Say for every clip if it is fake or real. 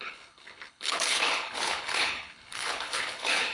fake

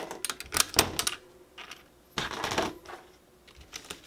real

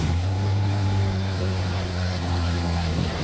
fake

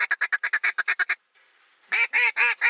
real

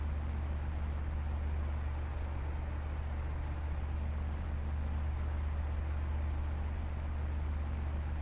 real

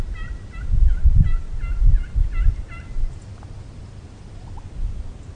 real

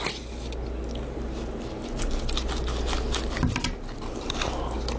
real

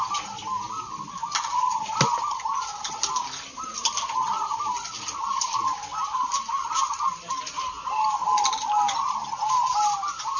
real